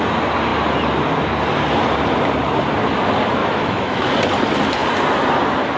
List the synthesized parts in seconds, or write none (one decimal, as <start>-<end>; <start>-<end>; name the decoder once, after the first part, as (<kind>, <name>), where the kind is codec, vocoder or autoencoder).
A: 3.4-4.1 (autoencoder, DAC-VAE)